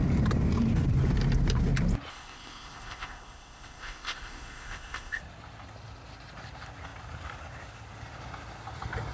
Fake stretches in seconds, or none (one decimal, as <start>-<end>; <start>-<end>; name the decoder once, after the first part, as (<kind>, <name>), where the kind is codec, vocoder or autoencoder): 2.1-5.2 (codec, ZipCodec)